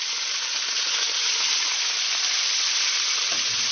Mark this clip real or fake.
real